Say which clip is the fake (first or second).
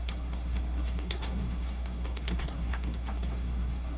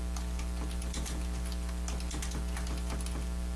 first